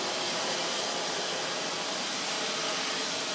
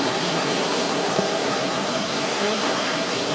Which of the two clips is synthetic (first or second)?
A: second